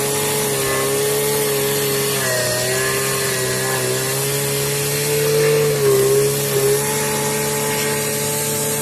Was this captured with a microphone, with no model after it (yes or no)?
yes